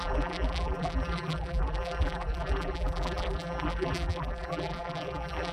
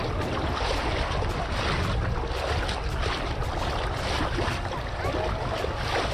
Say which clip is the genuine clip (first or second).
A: second